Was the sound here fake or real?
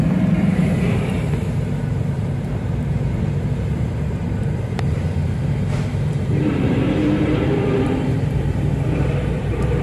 fake